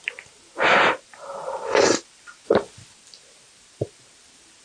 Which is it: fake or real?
fake